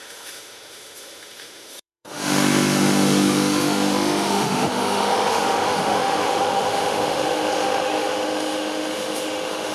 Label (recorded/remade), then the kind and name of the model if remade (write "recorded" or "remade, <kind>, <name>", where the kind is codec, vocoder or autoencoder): remade, autoencoder, DAC-VAE